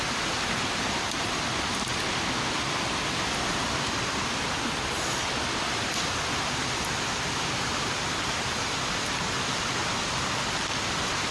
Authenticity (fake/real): real